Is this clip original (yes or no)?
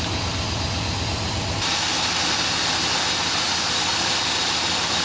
yes